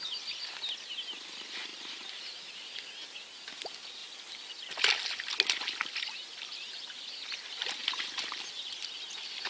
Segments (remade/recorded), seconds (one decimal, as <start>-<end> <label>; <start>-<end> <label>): 0.0-1.7 recorded; 1.7-2.4 remade; 2.4-9.5 recorded